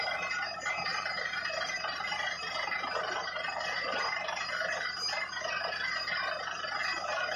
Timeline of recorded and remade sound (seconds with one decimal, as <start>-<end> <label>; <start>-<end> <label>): 0.0-0.9 recorded; 0.9-5.3 remade; 5.3-6.8 recorded; 6.8-7.4 remade